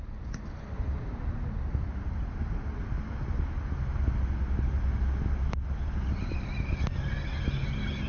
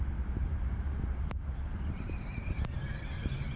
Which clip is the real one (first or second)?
first